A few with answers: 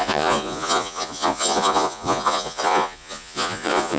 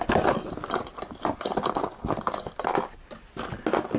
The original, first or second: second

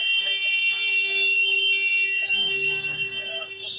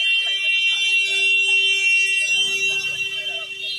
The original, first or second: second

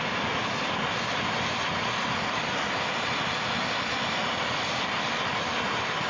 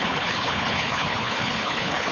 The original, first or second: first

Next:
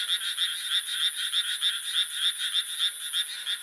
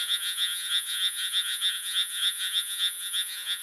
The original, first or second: first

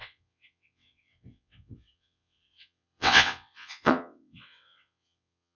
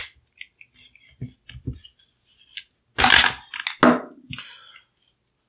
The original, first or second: second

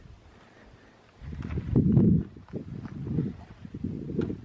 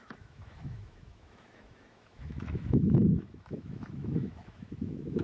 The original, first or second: first